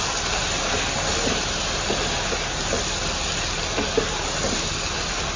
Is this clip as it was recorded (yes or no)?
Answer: yes